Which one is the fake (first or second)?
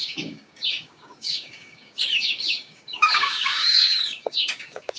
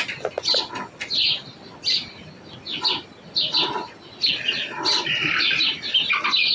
first